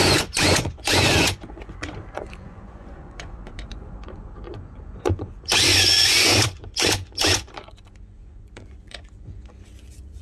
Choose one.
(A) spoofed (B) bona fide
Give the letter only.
A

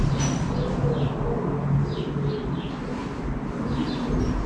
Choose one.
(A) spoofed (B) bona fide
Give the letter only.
B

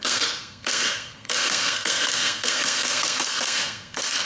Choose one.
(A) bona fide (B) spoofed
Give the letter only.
B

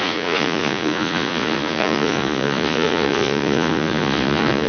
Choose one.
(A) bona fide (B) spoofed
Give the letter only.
B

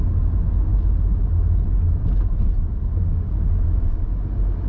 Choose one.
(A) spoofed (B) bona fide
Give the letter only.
B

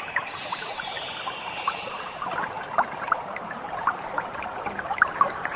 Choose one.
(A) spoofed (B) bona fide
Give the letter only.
A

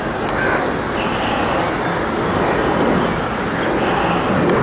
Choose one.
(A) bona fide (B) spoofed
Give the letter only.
A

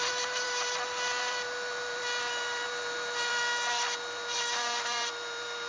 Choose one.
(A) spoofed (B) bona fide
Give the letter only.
A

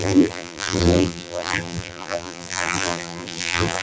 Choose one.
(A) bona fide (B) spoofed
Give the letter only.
B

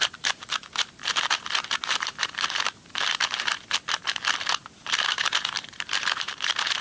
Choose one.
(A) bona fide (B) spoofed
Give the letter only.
B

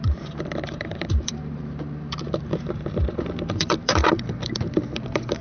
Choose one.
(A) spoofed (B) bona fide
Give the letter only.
A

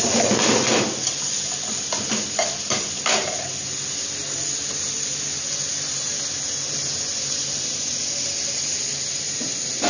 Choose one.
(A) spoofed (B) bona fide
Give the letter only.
B